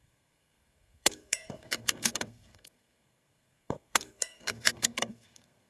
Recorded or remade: remade